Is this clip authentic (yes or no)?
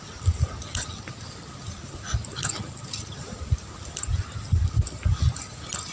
yes